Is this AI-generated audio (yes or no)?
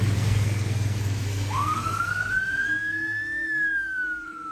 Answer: yes